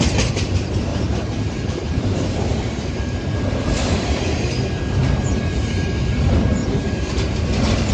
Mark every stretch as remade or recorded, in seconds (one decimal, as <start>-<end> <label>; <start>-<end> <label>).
0.0-0.9 recorded; 0.9-3.7 remade; 3.7-5.0 recorded; 5.0-6.0 remade; 6.0-6.6 recorded; 6.6-7.1 remade; 7.1-7.9 recorded